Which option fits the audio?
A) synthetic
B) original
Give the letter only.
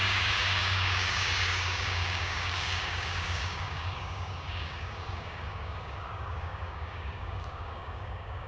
A